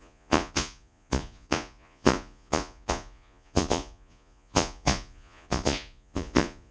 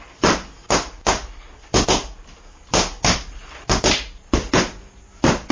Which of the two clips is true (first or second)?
second